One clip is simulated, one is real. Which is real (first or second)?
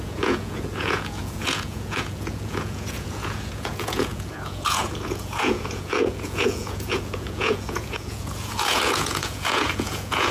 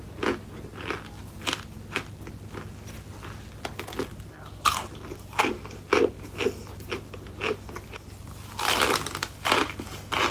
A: second